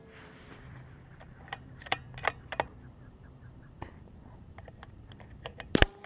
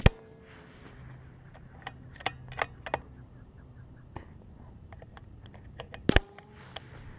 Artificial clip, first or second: first